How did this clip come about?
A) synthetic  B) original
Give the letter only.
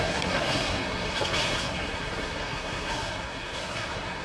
A